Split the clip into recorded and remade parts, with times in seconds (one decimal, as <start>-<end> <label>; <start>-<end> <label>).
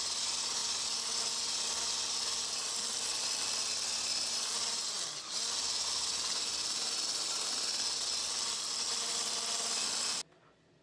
0.0-10.8 recorded